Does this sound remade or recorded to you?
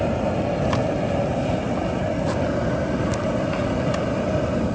recorded